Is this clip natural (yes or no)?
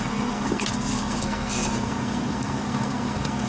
no